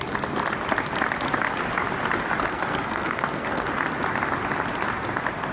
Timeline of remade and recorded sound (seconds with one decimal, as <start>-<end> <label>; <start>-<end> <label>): 0.0-2.5 recorded; 2.5-3.7 remade; 3.7-5.5 recorded